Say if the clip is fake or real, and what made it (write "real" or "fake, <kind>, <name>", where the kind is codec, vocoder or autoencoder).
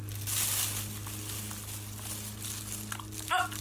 real